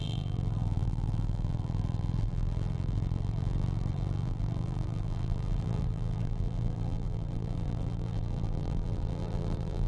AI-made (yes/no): yes